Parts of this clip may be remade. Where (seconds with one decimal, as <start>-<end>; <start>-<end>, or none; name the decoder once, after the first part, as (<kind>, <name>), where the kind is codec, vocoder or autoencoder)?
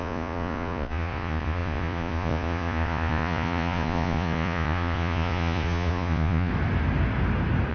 0.0-6.5 (vocoder, Vocos)